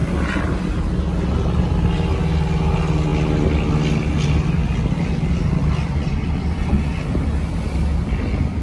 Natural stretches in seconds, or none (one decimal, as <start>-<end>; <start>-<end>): 0.0-5.8; 6.9-8.6